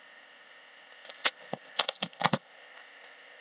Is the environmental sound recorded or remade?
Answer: remade